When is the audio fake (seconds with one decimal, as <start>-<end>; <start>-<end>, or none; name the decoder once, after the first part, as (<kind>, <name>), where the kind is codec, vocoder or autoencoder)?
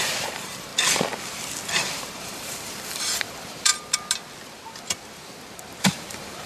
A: 0.0-0.7 (vocoder, BigVGAN v2); 1.7-3.7; 5.8-6.5